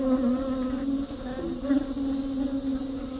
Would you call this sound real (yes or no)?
yes